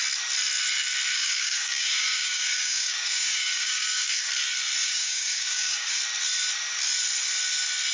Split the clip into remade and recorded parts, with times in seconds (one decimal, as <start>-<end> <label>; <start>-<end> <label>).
0.0-1.1 recorded; 1.1-4.3 remade; 4.3-4.8 recorded; 4.8-6.0 remade; 6.0-7.9 recorded